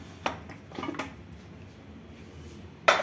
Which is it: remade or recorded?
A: recorded